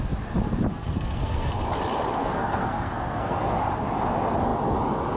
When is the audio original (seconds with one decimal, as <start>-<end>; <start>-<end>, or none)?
0.0-0.7; 1.5-2.2; 3.6-5.2